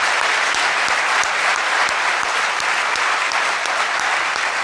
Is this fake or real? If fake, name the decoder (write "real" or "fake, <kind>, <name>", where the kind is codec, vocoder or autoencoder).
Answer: real